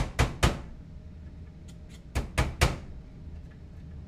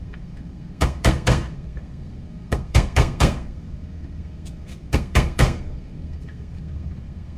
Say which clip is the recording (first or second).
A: first